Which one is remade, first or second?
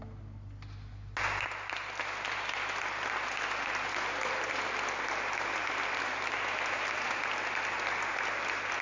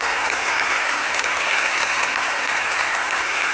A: second